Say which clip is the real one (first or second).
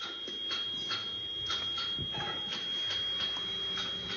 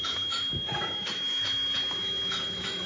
first